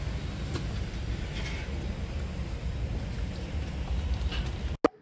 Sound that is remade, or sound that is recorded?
recorded